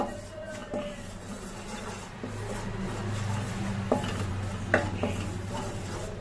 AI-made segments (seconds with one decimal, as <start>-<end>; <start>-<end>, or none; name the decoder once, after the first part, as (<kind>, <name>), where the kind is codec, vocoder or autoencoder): none